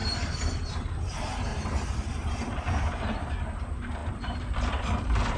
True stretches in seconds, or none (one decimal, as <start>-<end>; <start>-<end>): 0.8-1.5; 2.3-4.0